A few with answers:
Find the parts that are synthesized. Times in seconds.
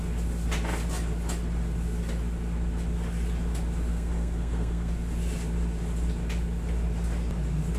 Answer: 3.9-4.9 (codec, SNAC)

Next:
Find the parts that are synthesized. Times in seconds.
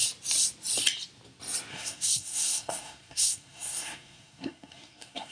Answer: 1.7-5.3 (codec, SNAC)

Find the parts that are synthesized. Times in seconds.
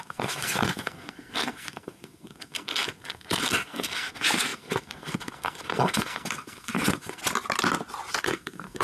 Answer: 0.0-7.2 (codec, SNAC); 8.2-8.8